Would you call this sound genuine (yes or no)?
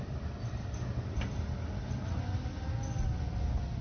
yes